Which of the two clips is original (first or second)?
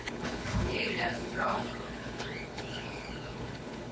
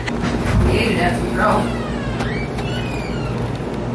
second